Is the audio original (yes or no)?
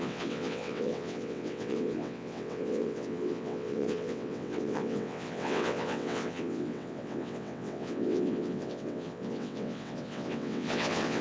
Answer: no